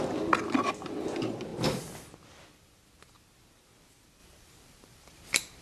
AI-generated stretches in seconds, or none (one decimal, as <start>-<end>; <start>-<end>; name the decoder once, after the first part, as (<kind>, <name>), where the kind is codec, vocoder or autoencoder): 4.2-5.6 (vocoder, BigVGAN v2)